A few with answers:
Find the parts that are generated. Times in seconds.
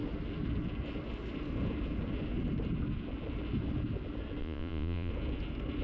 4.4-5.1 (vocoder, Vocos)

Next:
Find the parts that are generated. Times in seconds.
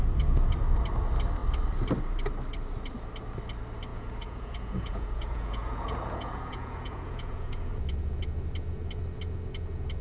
3.9-7.8 (vocoder, Vocos)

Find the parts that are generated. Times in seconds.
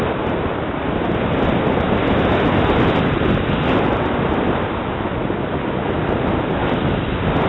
none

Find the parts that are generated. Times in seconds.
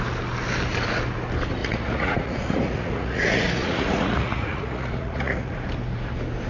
1.6-5.5 (vocoder, Vocos)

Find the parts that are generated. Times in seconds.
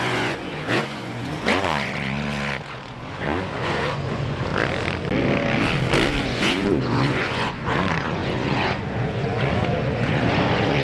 0.0-4.5 (vocoder, Vocos); 6.2-10.8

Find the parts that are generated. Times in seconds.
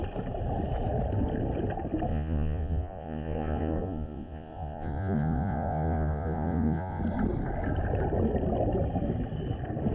2.1-7.0 (vocoder, Vocos)